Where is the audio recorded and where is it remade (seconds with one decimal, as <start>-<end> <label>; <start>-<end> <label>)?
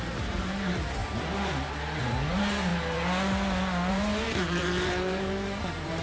0.0-1.0 remade; 1.0-2.0 recorded; 2.0-2.7 remade; 2.7-3.9 recorded; 3.9-6.0 remade